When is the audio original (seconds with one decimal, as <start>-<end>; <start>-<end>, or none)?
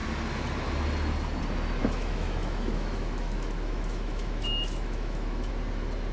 0.0-1.8; 5.5-6.1